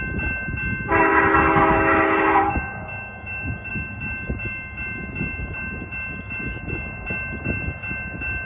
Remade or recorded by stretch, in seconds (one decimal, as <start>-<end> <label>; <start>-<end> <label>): 0.0-8.5 recorded